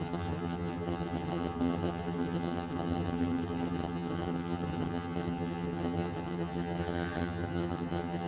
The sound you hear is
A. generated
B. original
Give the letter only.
A